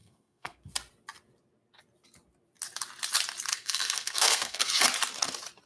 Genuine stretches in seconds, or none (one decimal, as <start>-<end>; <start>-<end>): 0.6-3.5; 4.8-5.7